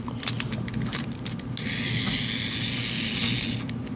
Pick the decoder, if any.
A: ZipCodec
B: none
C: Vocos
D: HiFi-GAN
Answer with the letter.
B